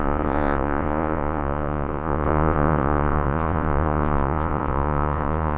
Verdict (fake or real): fake